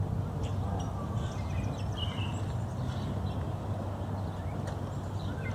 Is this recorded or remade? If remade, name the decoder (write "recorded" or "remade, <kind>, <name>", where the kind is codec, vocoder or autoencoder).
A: recorded